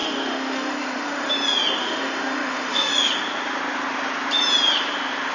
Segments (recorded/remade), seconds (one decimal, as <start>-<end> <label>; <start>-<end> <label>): 0.0-1.3 remade; 1.3-1.8 recorded; 1.8-2.9 remade; 2.9-5.3 recorded